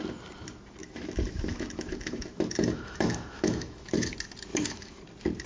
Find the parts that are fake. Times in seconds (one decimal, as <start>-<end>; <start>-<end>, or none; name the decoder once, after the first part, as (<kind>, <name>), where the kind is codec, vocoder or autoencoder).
0.8-4.1 (autoencoder, DAC-VAE); 4.5-5.0